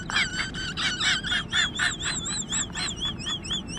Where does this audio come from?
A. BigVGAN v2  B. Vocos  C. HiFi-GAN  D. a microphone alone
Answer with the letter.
D